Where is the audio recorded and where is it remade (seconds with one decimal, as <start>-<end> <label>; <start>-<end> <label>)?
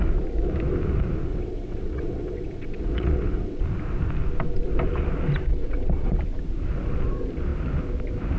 0.0-1.3 recorded; 1.3-3.6 remade; 3.6-5.5 recorded; 5.5-6.2 remade; 6.2-8.4 recorded